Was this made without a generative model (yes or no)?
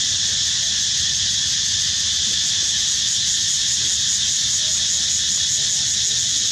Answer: yes